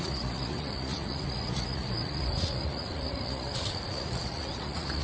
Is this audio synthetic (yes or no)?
yes